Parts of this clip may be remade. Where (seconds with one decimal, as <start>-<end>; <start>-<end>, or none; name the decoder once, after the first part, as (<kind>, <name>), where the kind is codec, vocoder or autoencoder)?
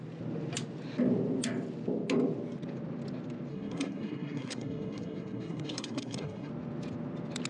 3.5-6.5 (codec, SNAC)